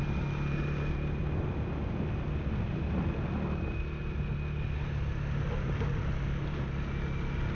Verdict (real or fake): real